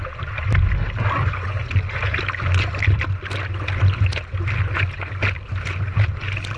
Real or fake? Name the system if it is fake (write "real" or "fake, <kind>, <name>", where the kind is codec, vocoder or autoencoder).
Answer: real